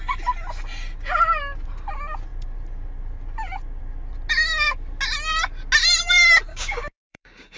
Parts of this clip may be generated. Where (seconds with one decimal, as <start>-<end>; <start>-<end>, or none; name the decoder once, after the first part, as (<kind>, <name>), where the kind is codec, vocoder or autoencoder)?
6.5-7.6 (codec, DAC)